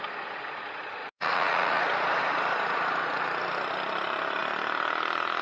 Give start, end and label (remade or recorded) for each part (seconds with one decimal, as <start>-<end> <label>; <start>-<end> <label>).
0.0-1.0 recorded; 1.0-1.8 remade; 1.8-5.4 recorded